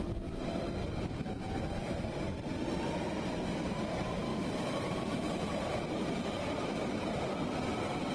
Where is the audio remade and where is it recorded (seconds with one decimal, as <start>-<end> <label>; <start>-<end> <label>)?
0.0-8.1 recorded